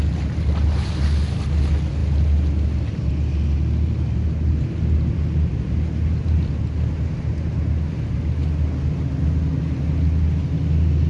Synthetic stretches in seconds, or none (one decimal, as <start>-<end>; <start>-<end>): none